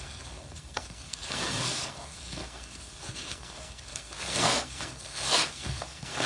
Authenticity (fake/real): fake